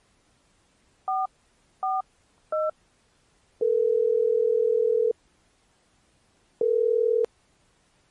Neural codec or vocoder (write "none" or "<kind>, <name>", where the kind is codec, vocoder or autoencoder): none